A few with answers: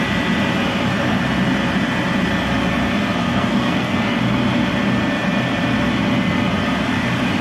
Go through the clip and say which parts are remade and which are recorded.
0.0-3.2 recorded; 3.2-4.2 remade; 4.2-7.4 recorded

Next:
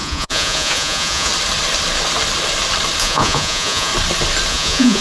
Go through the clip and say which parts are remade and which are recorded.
0.0-1.3 remade; 1.3-3.0 recorded; 3.0-3.9 remade; 3.9-4.5 recorded; 4.5-5.0 remade

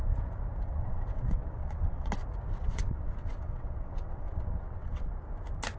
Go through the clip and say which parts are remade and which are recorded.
0.0-0.6 recorded; 0.6-2.1 remade; 2.1-2.6 recorded; 2.6-5.1 remade; 5.1-5.8 recorded

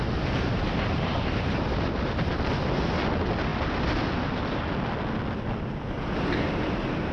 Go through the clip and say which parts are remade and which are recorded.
0.0-7.1 recorded

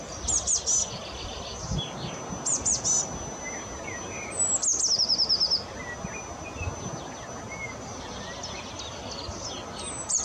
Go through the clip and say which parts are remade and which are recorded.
0.0-10.2 recorded